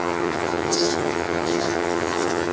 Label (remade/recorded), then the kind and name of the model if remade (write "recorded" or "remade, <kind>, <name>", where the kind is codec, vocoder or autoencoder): remade, vocoder, HiFi-GAN